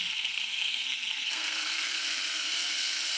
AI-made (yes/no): yes